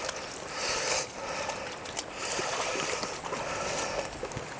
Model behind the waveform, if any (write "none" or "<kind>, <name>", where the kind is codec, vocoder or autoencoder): none